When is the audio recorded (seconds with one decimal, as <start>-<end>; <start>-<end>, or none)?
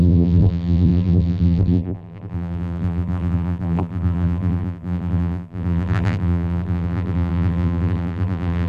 none